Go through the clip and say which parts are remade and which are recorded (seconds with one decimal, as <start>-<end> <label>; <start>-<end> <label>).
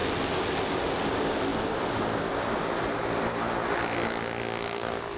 0.0-1.5 recorded; 1.5-2.0 remade; 2.0-5.2 recorded